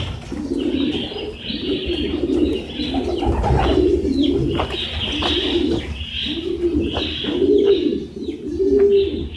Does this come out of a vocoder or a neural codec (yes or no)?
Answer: no